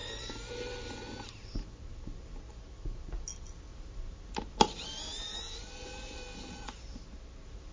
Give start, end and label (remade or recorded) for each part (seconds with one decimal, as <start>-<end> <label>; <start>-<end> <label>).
0.0-0.9 remade; 0.9-7.7 recorded